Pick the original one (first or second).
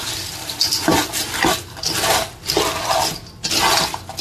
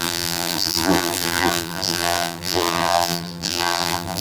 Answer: first